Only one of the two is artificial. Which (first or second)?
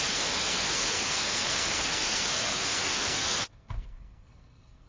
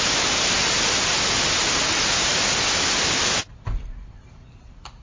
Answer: first